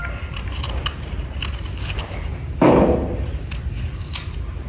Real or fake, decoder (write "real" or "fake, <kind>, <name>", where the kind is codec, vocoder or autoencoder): real